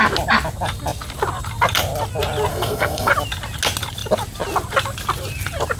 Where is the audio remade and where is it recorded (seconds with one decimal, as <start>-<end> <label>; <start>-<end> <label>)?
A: 0.0-2.5 recorded; 2.5-3.1 remade; 3.1-5.8 recorded